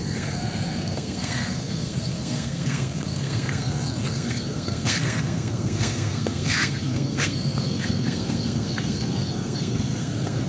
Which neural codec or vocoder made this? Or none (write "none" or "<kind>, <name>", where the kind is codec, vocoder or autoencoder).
codec, SNAC